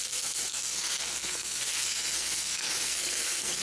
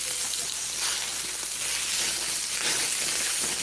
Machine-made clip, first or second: first